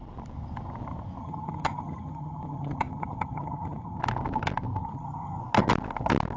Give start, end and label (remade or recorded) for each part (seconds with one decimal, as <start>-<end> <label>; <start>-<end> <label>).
0.0-1.2 recorded; 1.2-4.0 remade; 4.0-4.8 recorded; 4.8-5.4 remade; 5.4-6.4 recorded